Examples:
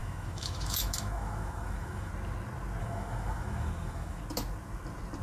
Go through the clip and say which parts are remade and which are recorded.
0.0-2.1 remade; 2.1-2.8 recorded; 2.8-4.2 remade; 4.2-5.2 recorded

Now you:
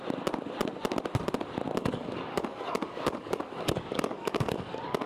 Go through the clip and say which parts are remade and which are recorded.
0.0-1.8 recorded; 1.8-5.1 remade

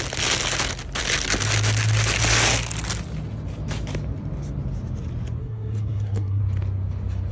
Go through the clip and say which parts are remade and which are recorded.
0.0-5.4 recorded; 5.4-6.4 remade; 6.4-7.3 recorded

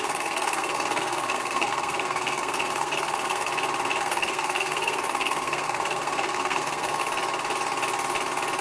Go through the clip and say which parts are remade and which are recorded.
0.0-3.5 remade; 3.5-4.0 recorded; 4.0-7.0 remade; 7.0-8.6 recorded

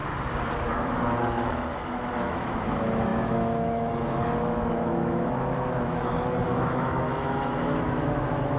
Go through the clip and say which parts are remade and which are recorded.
0.0-0.7 recorded; 0.7-8.6 remade

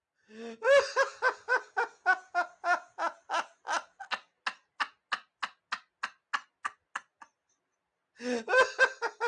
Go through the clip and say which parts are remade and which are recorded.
0.0-9.3 recorded

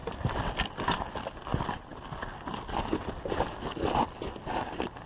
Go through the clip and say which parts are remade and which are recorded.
0.0-5.1 recorded